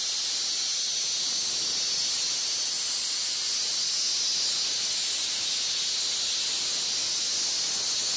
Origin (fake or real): real